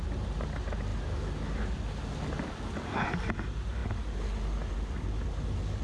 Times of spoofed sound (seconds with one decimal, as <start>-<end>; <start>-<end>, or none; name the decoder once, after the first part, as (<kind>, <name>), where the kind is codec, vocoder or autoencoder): none